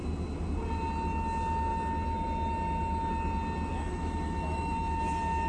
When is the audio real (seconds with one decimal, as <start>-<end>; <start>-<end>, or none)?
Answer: 0.0-3.7; 4.7-5.5